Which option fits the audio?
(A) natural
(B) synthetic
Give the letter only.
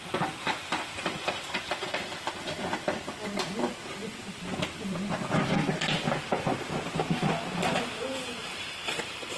A